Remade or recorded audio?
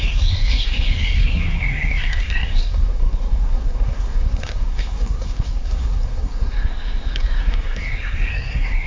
remade